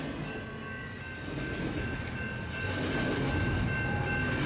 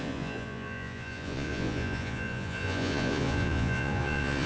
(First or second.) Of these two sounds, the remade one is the second